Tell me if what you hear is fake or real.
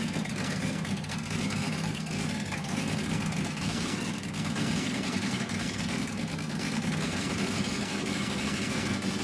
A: fake